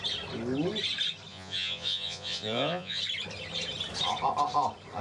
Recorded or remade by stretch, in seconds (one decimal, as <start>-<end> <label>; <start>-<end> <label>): 0.0-1.3 recorded; 1.3-3.0 remade; 3.0-5.0 recorded